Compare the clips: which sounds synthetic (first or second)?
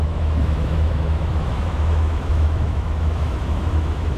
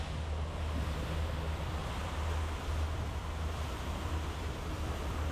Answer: first